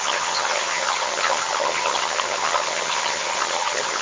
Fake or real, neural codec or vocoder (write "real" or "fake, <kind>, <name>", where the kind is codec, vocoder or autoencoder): fake, vocoder, HiFi-GAN